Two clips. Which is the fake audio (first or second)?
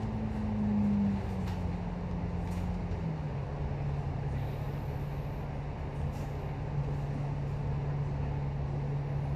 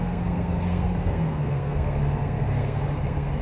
second